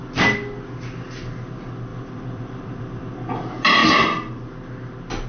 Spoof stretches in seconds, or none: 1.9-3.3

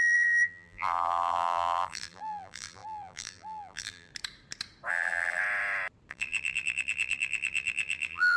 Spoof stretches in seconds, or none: 0.0-4.1; 4.9-5.4; 6.1-8.4